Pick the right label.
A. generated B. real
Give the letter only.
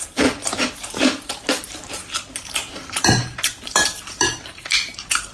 A